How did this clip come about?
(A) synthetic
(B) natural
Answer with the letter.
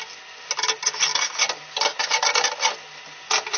B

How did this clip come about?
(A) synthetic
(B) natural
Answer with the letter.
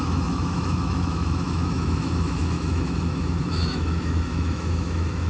A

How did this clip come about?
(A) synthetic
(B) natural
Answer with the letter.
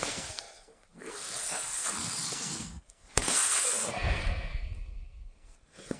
A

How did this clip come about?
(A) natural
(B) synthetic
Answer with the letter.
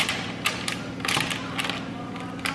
A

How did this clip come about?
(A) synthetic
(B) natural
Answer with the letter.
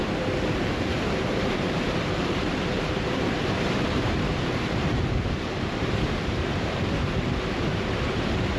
A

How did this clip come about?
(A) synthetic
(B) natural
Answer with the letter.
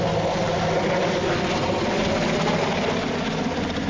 B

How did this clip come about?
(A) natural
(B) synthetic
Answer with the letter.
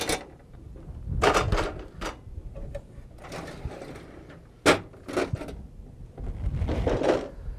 A